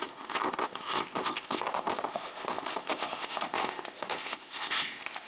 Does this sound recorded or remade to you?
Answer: remade